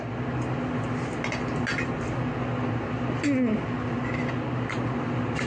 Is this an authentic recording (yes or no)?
yes